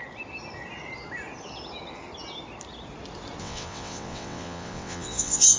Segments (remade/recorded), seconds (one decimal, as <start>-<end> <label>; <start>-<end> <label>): 0.0-3.4 recorded; 3.4-5.6 remade